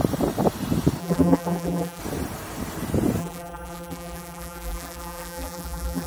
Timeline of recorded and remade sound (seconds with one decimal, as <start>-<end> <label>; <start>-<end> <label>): 0.0-1.0 recorded; 1.0-2.0 remade; 2.0-3.2 recorded; 3.2-6.1 remade